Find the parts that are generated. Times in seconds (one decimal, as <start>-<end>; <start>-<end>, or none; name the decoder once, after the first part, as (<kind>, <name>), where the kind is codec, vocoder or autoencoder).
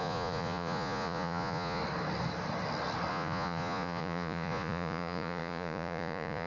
0.0-1.8 (vocoder, Vocos); 3.1-6.5